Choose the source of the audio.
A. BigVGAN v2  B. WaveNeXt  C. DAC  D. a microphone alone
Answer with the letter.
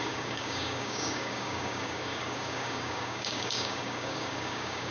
C